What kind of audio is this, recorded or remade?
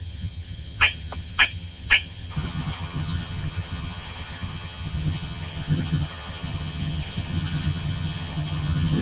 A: remade